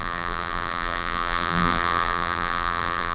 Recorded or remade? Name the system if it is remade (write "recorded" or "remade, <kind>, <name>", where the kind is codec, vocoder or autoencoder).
remade, vocoder, BigVGAN v2